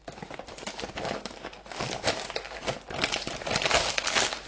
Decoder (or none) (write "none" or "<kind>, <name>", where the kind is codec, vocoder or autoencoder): none